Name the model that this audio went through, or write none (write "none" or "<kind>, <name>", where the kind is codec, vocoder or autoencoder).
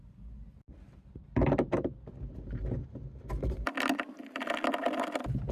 none